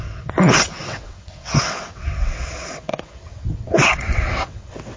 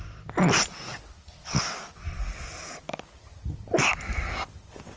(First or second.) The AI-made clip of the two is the first